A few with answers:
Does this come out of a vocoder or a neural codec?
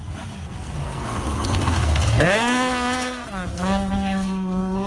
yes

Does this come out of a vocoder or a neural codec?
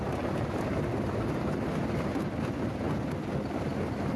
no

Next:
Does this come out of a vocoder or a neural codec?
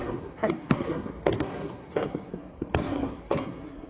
yes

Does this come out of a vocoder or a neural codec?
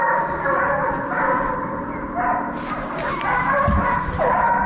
no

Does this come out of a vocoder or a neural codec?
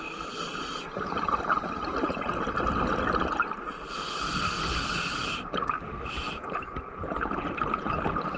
no